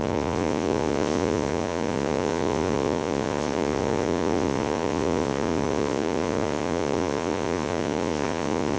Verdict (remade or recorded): remade